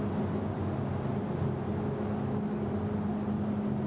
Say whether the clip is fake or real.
real